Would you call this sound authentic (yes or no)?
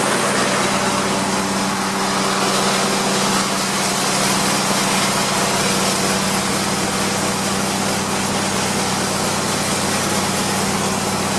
yes